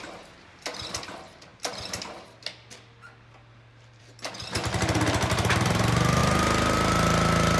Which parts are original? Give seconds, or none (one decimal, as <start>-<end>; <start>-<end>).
0.0-7.6